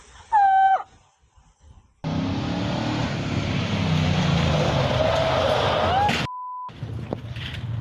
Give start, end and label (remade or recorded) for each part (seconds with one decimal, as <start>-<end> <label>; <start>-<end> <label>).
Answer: 0.0-3.0 recorded; 3.0-3.7 remade; 3.7-7.8 recorded